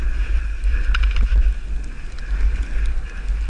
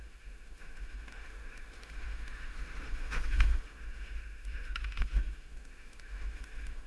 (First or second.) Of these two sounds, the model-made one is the second